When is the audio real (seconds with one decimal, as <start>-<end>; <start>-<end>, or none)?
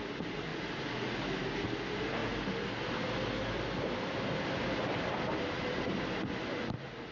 0.0-0.5; 1.2-7.1